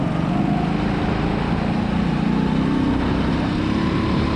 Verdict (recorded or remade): recorded